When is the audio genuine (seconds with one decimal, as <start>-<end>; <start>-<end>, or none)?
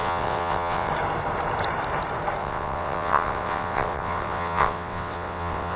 0.9-2.4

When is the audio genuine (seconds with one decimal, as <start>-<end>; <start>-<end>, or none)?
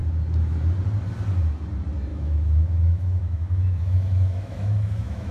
0.0-2.1